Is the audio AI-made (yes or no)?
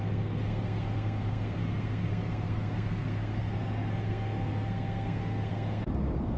yes